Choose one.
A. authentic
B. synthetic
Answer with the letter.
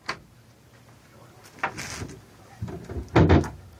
A